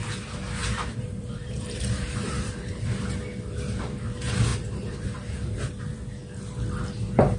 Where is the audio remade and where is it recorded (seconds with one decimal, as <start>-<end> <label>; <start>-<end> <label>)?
0.0-0.6 recorded; 0.6-2.8 remade; 2.8-4.5 recorded; 4.5-5.8 remade; 5.8-7.4 recorded